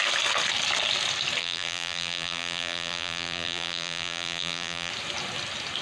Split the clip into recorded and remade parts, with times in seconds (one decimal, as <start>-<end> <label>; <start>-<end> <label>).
0.0-1.4 recorded; 1.4-4.9 remade; 4.9-5.8 recorded